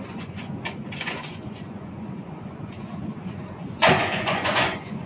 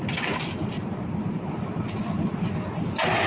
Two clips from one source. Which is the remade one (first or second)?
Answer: first